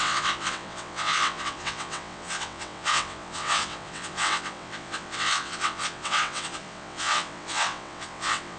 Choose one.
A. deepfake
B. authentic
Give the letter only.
A